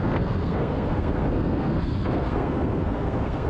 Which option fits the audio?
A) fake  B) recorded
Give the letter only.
A